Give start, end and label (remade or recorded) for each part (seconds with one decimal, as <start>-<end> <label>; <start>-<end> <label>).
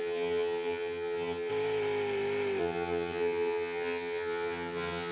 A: 0.0-1.5 remade; 1.5-2.6 recorded; 2.6-5.1 remade